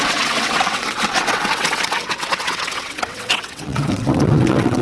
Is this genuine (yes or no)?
no